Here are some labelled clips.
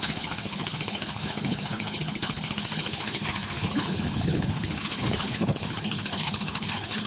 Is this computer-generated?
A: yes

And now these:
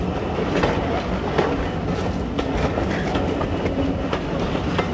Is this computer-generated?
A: no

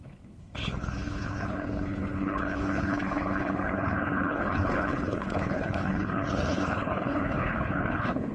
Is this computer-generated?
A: yes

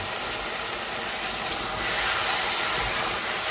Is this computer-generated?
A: no